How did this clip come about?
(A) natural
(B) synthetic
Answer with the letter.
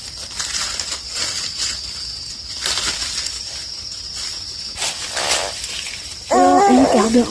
A